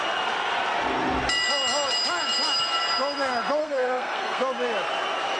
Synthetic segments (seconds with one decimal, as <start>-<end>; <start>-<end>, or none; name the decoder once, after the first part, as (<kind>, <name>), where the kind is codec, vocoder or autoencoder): 3.6-4.4 (codec, SNAC)